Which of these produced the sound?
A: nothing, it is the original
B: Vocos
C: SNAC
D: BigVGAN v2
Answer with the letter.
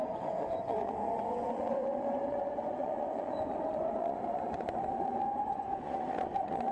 B